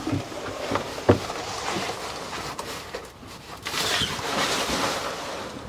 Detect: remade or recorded recorded